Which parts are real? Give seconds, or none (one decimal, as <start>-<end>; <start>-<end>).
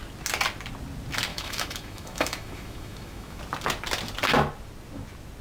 0.0-1.3; 3.4-5.4